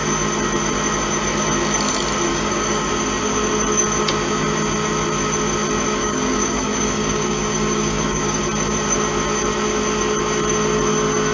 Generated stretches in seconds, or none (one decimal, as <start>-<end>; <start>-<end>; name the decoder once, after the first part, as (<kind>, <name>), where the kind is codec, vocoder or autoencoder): 2.3-2.9 (codec, DAC); 6.0-8.4

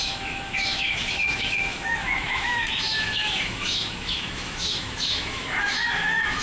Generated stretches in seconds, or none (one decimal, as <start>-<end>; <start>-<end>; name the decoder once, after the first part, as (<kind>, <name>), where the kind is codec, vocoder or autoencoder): 0.0-6.4 (autoencoder, DAC-VAE)

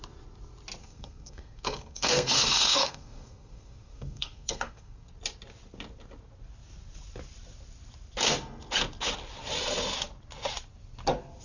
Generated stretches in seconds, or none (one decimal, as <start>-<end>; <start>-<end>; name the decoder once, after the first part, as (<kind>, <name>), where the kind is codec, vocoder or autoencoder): 0.8-5.1 (codec, SNAC)

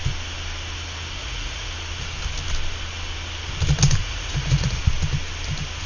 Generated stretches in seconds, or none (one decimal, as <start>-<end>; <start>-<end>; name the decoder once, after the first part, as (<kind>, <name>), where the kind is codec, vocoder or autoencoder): 1.2-1.7 (vocoder, Vocos); 4.0-4.8

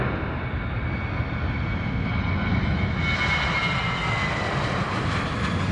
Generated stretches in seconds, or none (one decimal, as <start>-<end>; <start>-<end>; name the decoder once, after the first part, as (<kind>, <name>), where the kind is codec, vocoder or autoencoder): 2.5-3.0 (autoencoder, DAC-VAE)